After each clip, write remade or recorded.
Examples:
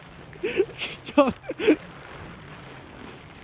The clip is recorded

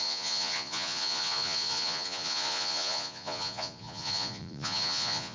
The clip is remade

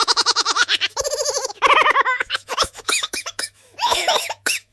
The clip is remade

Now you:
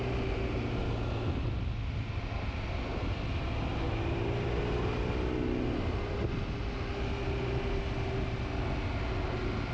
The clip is recorded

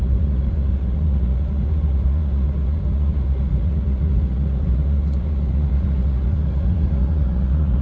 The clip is remade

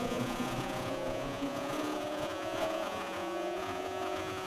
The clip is remade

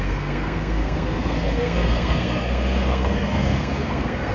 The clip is remade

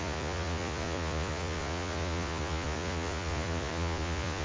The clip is remade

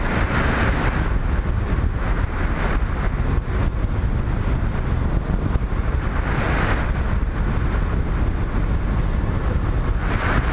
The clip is recorded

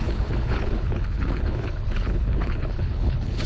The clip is remade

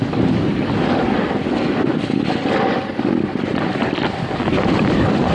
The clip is recorded